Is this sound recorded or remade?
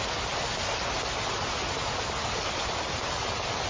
recorded